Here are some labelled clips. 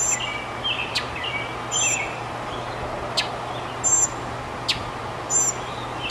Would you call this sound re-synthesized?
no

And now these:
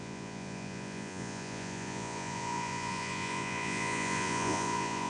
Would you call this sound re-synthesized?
yes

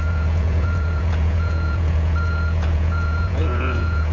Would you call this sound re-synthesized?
yes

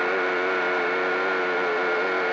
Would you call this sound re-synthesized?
no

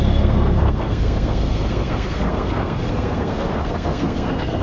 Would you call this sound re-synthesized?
yes